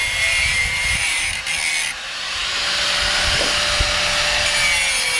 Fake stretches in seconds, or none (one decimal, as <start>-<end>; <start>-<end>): 0.0-1.4